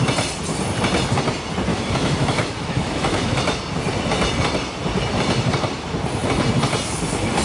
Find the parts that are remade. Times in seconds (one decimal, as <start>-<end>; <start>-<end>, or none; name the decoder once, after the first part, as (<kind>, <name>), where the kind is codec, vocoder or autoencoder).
1.7-3.6 (autoencoder, DAC-VAE)